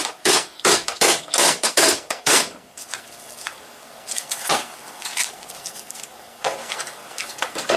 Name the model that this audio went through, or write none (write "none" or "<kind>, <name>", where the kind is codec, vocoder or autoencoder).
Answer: codec, SNAC